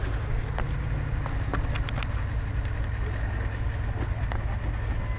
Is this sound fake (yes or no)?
no